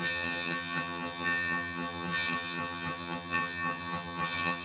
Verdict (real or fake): fake